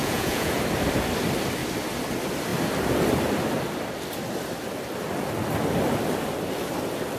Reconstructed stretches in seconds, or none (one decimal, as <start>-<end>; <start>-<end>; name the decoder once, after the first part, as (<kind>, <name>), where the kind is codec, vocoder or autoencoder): 0.0-0.6 (vocoder, Vocos)